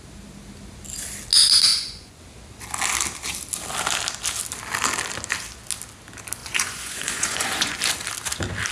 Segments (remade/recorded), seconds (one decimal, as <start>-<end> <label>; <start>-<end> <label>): 0.0-1.7 recorded; 1.7-2.2 remade; 2.2-6.4 recorded; 6.4-7.8 remade; 7.8-8.7 recorded